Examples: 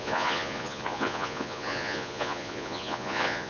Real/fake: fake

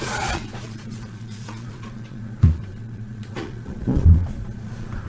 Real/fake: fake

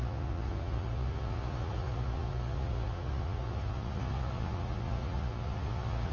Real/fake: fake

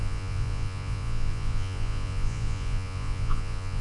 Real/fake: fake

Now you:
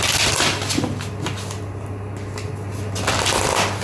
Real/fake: real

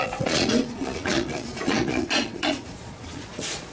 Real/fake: fake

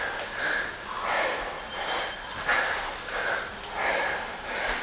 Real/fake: real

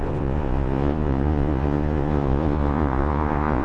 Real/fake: fake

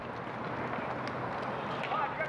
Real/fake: real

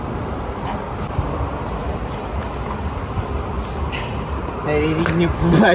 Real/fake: real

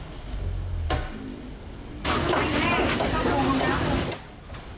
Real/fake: real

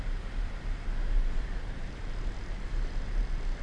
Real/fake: real